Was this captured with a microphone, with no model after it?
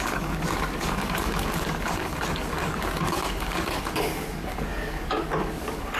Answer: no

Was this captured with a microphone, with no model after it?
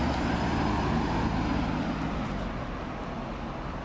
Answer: yes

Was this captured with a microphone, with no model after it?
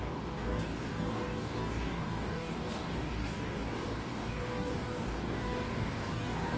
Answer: no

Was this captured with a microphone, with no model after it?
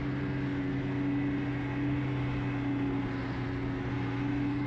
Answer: yes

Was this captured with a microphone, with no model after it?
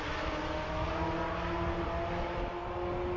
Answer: yes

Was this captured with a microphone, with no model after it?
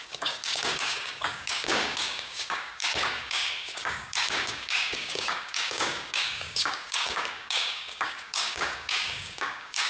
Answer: no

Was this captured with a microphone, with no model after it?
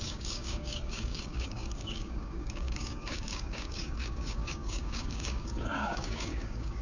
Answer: no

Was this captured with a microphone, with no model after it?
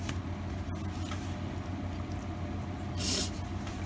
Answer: yes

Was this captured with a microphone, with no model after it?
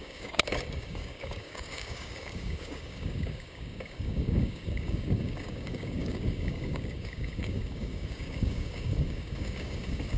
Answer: no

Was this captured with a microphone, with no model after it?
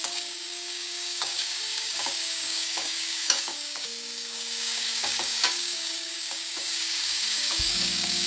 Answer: no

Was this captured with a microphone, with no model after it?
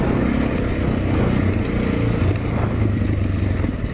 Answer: yes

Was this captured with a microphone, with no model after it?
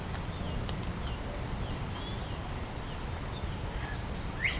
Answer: yes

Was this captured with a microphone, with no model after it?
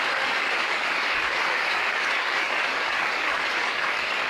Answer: no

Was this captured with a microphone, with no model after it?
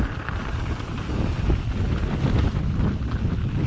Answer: yes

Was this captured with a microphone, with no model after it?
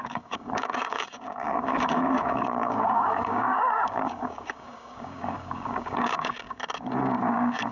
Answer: no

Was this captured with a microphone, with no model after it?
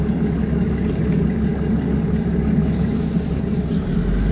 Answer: no